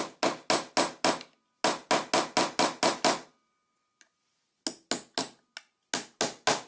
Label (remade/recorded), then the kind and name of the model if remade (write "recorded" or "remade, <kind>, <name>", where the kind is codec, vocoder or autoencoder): recorded